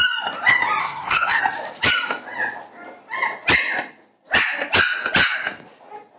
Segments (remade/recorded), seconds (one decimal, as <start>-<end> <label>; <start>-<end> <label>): 0.0-0.8 recorded; 0.8-1.4 remade; 1.4-6.2 recorded